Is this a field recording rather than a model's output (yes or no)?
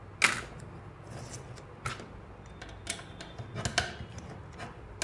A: yes